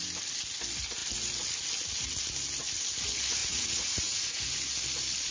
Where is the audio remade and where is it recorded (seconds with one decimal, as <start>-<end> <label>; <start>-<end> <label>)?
0.0-3.4 recorded; 3.4-4.6 remade; 4.6-5.3 recorded